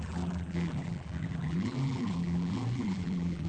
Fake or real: fake